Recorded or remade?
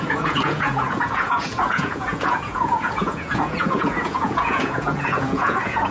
remade